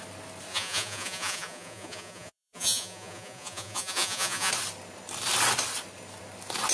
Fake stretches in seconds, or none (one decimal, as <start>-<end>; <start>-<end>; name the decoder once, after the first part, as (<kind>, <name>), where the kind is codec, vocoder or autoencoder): 0.5-4.5 (vocoder, Vocos)